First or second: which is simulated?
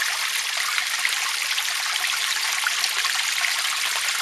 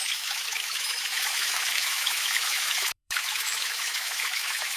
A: second